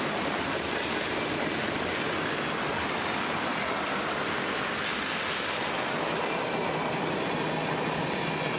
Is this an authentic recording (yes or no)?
yes